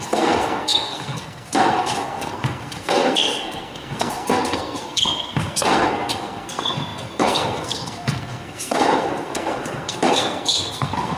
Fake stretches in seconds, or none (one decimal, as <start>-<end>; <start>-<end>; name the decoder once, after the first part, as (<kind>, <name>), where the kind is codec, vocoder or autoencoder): 0.0-11.2 (codec, SNAC)